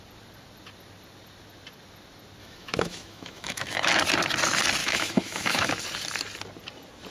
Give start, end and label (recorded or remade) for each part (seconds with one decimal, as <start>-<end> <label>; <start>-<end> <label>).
0.0-2.4 recorded; 2.4-3.9 remade; 3.9-4.8 recorded; 4.8-5.7 remade; 5.7-7.1 recorded